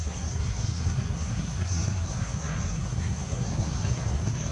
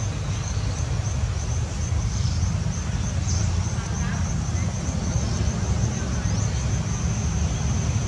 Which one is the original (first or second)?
second